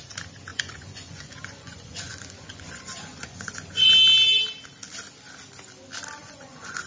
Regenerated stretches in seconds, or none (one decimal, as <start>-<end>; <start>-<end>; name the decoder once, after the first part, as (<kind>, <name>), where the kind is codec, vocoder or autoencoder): 0.5-3.9 (vocoder, Vocos); 6.2-6.9